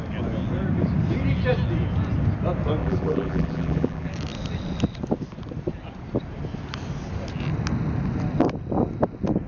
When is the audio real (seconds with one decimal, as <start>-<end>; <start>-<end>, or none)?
0.0-2.8; 4.1-9.5